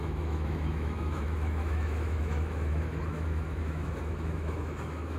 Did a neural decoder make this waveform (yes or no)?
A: yes